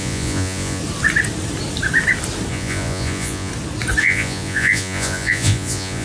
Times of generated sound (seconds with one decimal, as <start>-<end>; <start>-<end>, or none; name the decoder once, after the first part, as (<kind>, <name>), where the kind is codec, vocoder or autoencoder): 0.0-0.8 (vocoder, Vocos); 2.5-3.5; 4.0-6.0